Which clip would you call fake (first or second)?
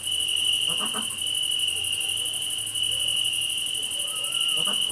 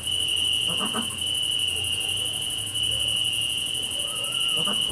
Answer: second